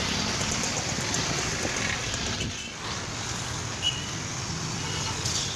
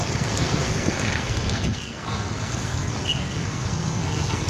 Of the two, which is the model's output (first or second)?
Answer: second